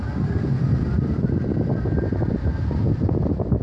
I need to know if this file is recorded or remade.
remade